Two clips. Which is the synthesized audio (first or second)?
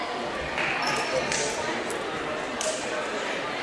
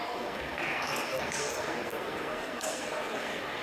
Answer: second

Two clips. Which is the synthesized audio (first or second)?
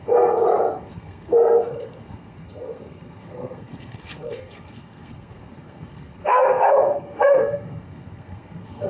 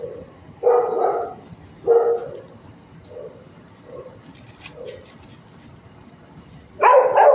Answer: first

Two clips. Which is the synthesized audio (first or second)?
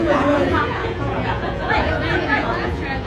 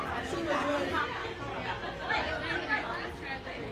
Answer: first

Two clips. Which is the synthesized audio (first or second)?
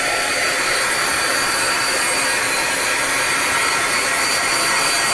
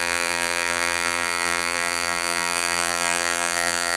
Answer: second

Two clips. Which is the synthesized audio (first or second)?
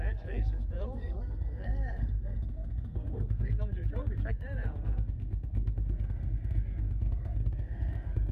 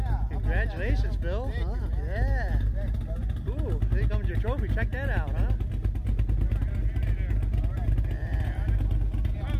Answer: first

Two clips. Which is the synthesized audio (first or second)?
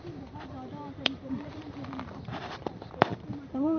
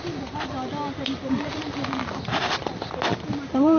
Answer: first